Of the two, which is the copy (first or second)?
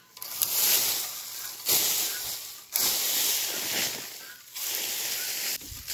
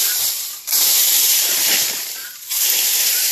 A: second